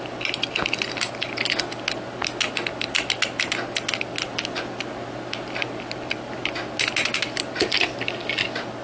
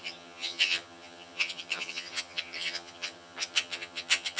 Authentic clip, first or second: first